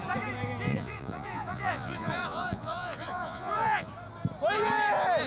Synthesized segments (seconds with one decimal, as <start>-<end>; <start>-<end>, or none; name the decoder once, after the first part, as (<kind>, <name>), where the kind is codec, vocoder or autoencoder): 0.7-3.9 (vocoder, Vocos)